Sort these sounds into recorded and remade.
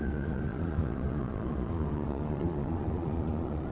remade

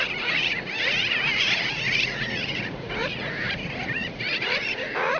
remade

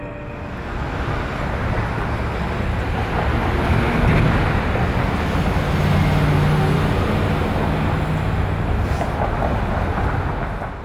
recorded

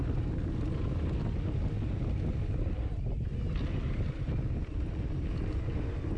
recorded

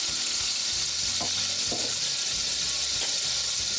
recorded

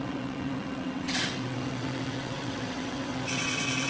remade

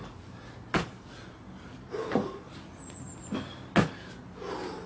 recorded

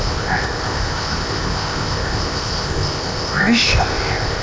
remade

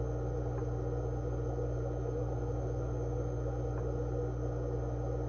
recorded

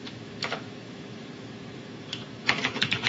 remade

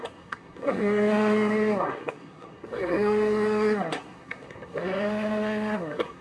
remade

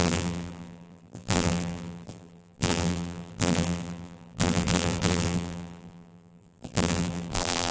remade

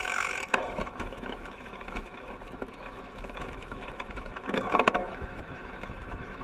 remade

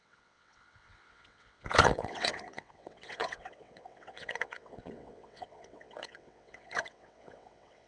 remade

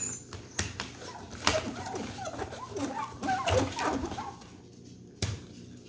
recorded